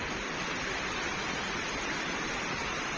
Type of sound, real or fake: fake